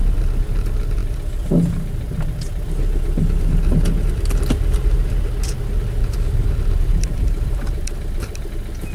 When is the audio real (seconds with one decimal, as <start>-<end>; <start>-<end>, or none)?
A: 0.0-6.0; 8.5-8.9